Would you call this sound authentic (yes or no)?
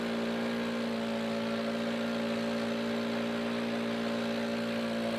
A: yes